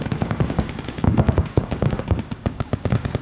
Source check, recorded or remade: remade